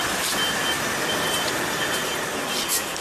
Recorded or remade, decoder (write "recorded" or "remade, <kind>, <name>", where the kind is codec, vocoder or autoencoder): recorded